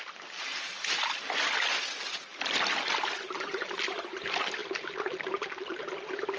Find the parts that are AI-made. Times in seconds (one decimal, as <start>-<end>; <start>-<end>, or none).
4.6-5.8